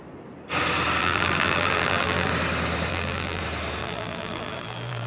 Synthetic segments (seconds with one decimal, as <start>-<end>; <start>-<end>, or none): 1.0-2.3; 2.9-3.4; 3.8-5.1